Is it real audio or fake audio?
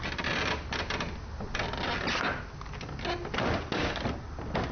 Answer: real